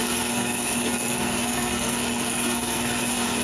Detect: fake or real fake